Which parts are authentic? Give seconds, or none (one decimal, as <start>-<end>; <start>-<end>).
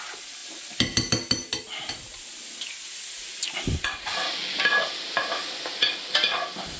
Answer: 0.0-6.8